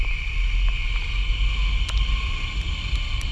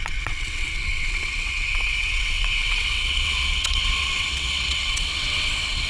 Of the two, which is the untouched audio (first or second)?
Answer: first